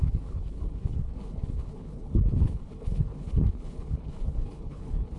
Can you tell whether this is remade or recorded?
remade